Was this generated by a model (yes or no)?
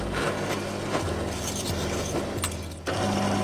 no